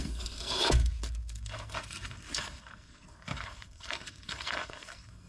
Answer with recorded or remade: remade